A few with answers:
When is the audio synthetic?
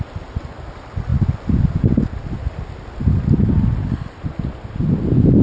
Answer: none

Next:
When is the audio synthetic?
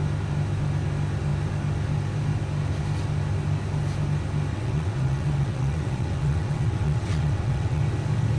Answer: 4.5-7.8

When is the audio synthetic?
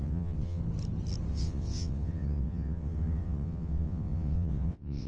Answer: 0.0-0.6; 1.3-5.1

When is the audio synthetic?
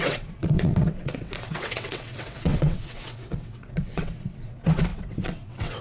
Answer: 0.0-5.8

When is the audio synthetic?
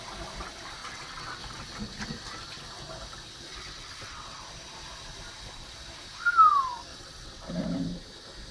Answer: 0.8-1.4; 3.5-4.4; 6.9-7.5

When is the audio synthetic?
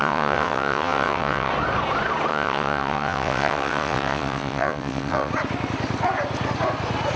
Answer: 0.0-1.5; 2.3-5.3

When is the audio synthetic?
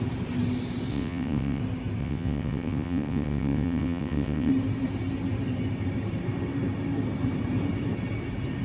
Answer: 0.9-1.6; 2.0-4.5